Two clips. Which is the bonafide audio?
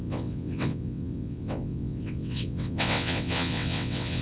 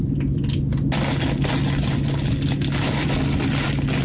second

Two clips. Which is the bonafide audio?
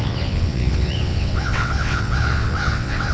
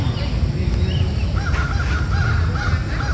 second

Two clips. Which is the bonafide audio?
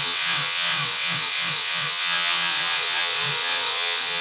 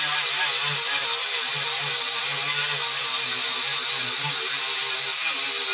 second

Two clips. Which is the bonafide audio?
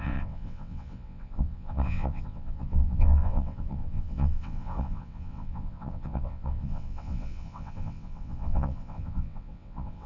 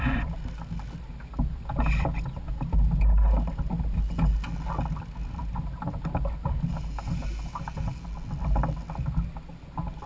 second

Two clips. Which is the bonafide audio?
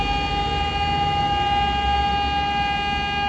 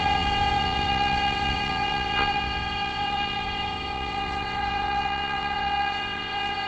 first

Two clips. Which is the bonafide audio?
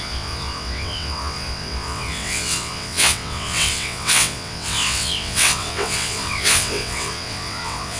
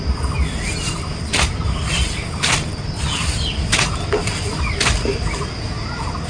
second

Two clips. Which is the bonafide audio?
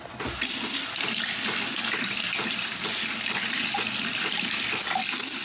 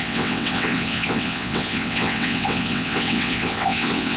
first